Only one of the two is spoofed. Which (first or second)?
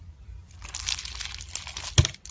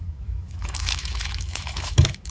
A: second